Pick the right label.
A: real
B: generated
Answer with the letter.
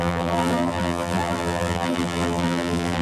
B